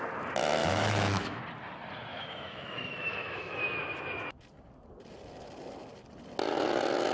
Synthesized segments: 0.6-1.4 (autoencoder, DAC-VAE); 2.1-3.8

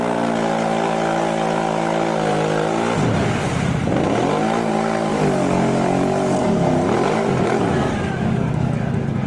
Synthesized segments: 5.1-9.3 (codec, DAC)

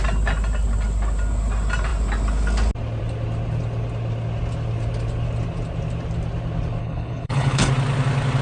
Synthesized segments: 6.8-7.7 (codec, HILCodec)

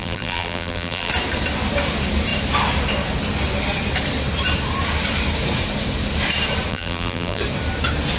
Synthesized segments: 0.0-1.1 (vocoder, BigVGAN v2); 6.7-7.4

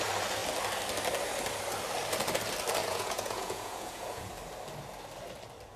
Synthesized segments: 2.8-4.3 (vocoder, Vocos)

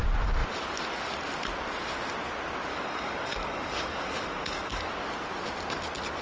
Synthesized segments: 2.7-4.9 (codec, DAC)

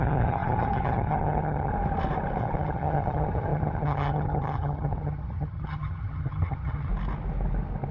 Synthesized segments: 0.0-1.7 (vocoder, HiFi-GAN); 2.4-6.9